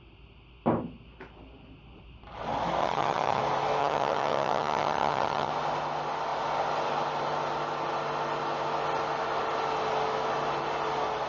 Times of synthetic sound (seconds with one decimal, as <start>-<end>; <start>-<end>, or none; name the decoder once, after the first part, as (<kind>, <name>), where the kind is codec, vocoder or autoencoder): 2.8-3.4 (vocoder, HiFi-GAN); 3.8-5.5